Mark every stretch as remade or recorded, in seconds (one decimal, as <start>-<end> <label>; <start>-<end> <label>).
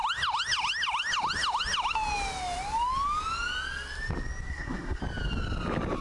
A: 0.0-4.5 recorded; 4.5-5.0 remade; 5.0-6.0 recorded